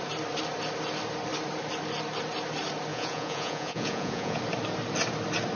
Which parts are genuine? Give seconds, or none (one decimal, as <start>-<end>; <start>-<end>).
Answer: 0.0-2.9; 4.4-5.5